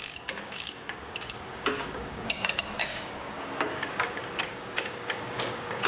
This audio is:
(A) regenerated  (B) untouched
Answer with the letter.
A